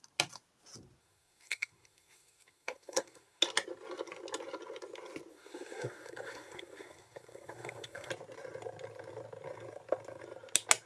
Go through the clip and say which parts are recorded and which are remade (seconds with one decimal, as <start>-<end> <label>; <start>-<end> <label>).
0.0-1.0 recorded; 1.0-3.4 remade; 3.4-5.3 recorded; 5.3-8.1 remade; 8.1-10.9 recorded